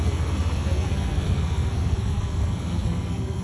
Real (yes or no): no